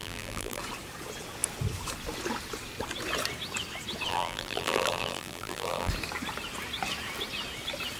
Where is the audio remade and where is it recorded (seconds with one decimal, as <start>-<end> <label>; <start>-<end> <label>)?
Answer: 0.0-0.6 remade; 0.6-4.1 recorded; 4.1-5.9 remade; 5.9-8.0 recorded